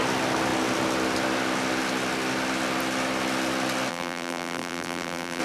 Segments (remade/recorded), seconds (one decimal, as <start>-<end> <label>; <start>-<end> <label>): 0.0-3.9 recorded; 3.9-5.4 remade